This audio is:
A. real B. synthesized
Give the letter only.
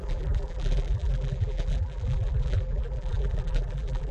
B